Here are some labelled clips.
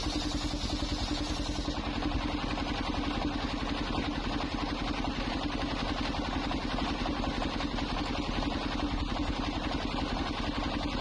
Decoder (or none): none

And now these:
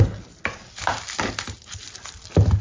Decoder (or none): none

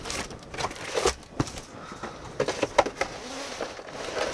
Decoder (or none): none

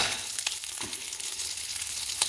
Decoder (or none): codec, HILCodec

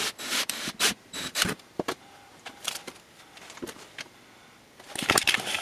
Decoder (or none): vocoder, BigVGAN v2